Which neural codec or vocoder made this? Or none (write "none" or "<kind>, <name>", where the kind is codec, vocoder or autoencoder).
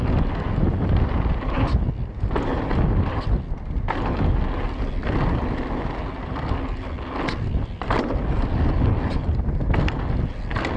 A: none